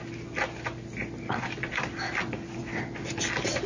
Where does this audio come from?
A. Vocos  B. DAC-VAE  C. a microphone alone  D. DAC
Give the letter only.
C